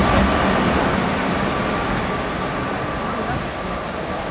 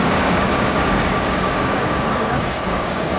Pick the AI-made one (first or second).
second